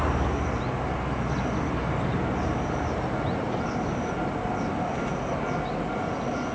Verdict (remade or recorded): recorded